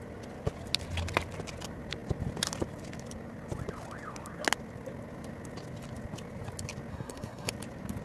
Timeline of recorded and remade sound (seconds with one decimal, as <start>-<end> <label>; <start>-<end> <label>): 0.0-6.9 recorded; 6.9-7.5 remade; 7.5-8.0 recorded